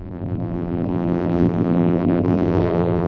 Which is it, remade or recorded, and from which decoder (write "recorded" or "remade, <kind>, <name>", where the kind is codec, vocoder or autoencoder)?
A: remade, vocoder, BigVGAN v2